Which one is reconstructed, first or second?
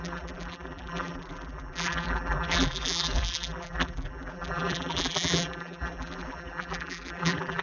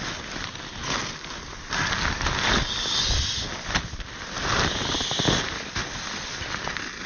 first